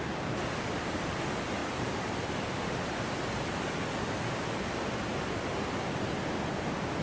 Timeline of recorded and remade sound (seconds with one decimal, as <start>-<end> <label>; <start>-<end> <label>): 0.0-7.0 recorded